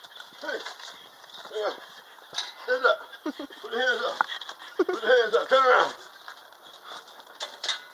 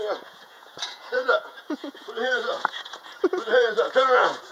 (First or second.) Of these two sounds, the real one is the first